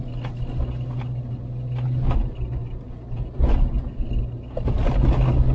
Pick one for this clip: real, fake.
real